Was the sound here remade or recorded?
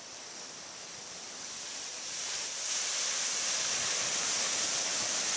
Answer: remade